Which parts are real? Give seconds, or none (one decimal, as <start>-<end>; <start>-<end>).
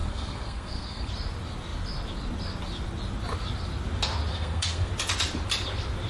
1.1-4.3; 4.9-6.1